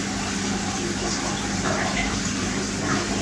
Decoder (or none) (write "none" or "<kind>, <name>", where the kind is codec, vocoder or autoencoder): none